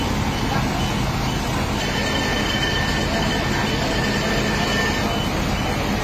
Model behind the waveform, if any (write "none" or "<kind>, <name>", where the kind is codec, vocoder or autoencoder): none